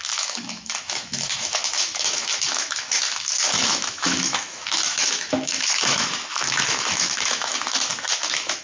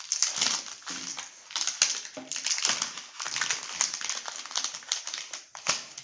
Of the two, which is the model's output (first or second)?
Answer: first